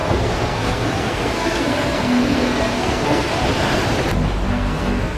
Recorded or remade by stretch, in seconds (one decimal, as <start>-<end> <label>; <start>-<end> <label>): 0.0-3.3 remade; 3.3-4.5 recorded; 4.5-5.2 remade